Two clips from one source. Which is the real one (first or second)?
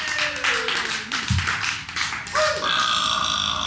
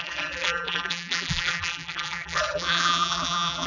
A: first